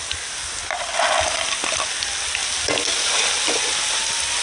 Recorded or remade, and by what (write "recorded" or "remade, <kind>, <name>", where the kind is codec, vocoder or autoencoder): recorded